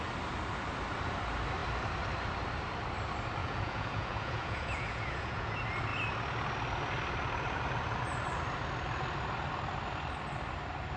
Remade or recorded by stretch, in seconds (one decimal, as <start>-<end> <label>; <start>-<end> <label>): 0.0-3.4 recorded; 3.4-5.5 remade; 5.5-11.0 recorded